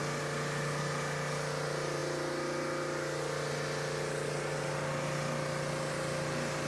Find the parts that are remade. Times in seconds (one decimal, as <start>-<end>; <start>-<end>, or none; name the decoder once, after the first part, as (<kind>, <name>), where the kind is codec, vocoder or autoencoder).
none